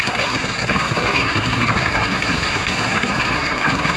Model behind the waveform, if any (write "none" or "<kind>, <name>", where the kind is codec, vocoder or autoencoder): codec, SNAC